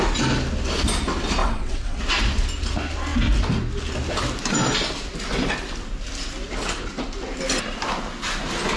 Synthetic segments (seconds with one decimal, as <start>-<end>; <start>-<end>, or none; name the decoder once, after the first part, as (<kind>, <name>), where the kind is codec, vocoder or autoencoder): 1.4-2.0 (vocoder, WaveNeXt)